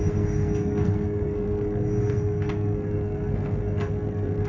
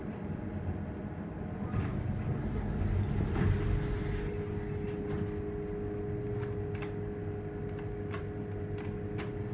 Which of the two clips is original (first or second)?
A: second